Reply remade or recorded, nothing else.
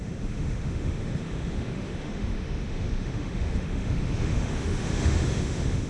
remade